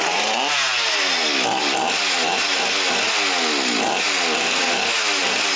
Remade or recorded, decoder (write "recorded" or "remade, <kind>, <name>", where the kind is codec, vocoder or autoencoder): recorded